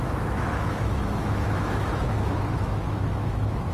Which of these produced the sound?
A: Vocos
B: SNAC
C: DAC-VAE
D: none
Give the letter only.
C